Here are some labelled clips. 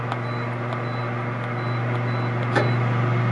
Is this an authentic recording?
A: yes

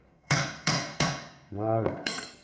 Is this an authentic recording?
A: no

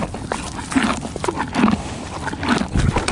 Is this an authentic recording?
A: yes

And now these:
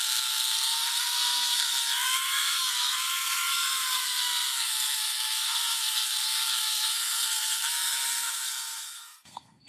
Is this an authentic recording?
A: no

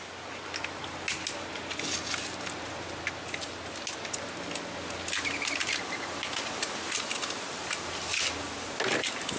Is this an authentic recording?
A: yes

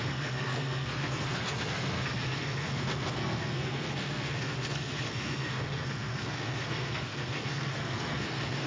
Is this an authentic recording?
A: no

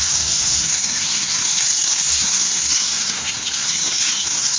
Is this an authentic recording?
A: no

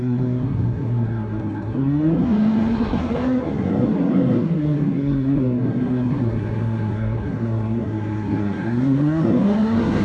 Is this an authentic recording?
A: no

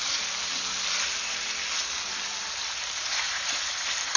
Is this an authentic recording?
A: yes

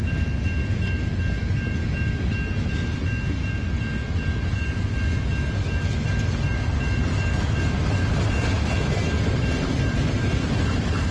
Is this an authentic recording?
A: yes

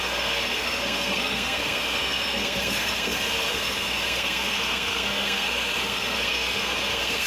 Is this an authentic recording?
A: no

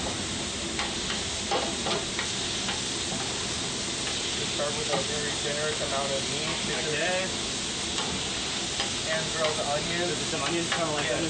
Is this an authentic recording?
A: yes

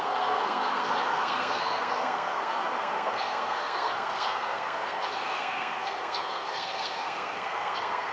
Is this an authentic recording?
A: no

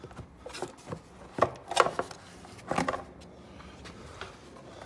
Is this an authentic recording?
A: yes